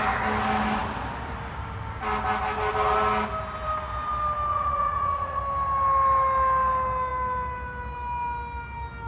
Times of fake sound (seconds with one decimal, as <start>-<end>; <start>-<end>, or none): 4.5-5.4